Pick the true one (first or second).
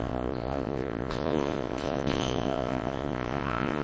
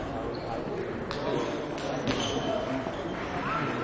second